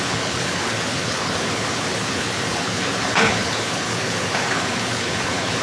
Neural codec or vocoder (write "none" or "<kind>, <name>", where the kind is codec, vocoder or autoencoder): codec, HILCodec